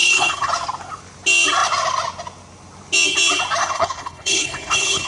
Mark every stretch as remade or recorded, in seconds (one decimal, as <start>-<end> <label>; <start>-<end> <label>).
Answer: 0.0-0.5 remade; 0.5-3.6 recorded; 3.6-5.1 remade